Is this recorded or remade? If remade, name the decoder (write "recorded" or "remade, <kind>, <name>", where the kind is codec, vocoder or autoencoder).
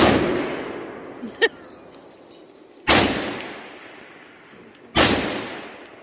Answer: recorded